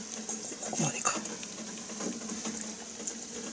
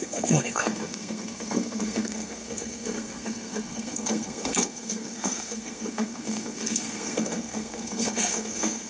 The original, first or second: first